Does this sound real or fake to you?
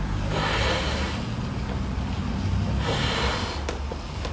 real